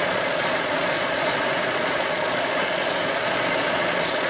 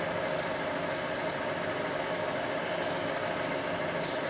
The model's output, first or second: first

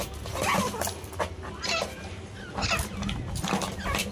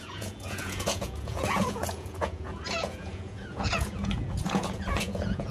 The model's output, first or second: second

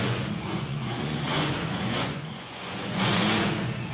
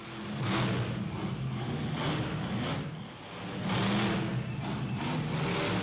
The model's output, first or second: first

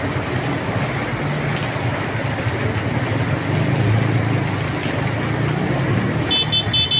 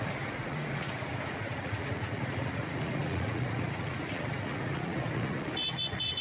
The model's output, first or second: second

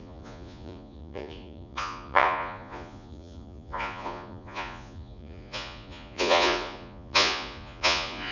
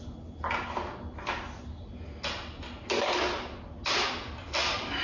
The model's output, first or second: first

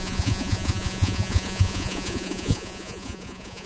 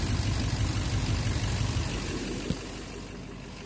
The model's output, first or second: first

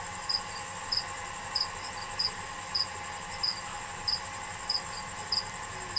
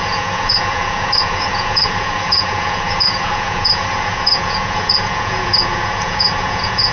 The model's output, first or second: second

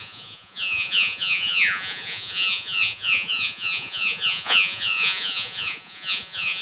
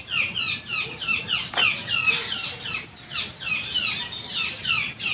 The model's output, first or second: first